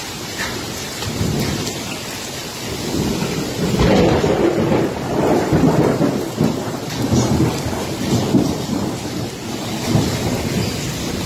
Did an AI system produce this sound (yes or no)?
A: no